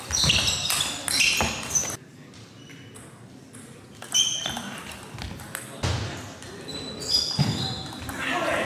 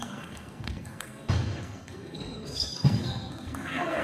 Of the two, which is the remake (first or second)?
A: second